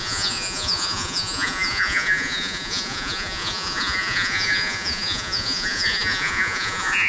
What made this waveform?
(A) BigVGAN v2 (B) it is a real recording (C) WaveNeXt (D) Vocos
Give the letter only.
D